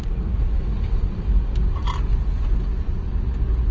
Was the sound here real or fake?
real